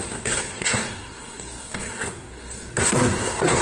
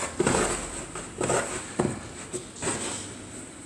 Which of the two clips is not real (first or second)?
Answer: first